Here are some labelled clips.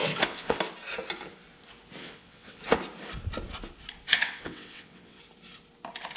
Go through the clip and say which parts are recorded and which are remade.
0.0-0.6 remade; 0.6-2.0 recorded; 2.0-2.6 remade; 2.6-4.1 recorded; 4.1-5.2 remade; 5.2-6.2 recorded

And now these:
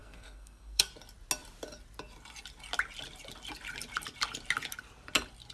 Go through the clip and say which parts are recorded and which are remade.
0.0-0.9 remade; 0.9-5.5 recorded

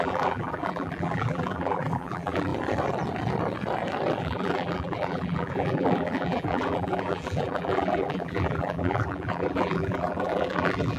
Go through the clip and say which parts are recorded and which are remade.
0.0-2.5 remade; 2.5-4.2 recorded; 4.2-11.0 remade

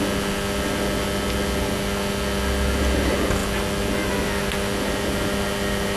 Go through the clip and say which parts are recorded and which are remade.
0.0-6.0 recorded

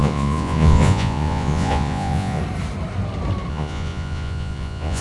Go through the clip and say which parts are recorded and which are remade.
0.0-2.4 remade; 2.4-3.5 recorded; 3.5-5.0 remade

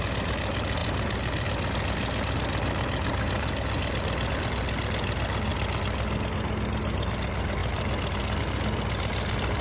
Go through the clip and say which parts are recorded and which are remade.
0.0-9.6 recorded

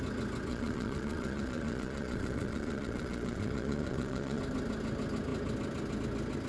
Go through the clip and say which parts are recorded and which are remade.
0.0-0.5 recorded; 0.5-4.4 remade; 4.4-6.5 recorded